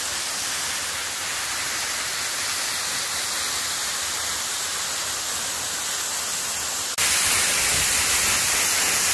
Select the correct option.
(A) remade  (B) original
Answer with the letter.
B